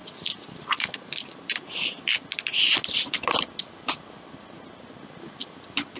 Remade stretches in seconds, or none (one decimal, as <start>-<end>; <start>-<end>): none